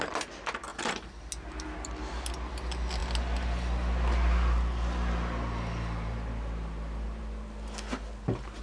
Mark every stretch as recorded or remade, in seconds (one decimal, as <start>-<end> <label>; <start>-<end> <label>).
0.0-8.6 recorded